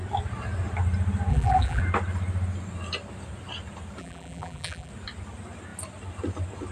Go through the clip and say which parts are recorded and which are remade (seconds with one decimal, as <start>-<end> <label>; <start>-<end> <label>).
0.0-1.3 recorded; 1.3-1.8 remade; 1.8-4.0 recorded; 4.0-4.9 remade; 4.9-6.7 recorded